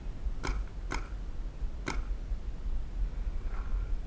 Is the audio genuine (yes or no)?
yes